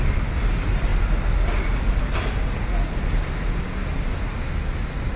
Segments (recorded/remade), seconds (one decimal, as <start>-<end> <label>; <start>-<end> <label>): 0.0-5.2 recorded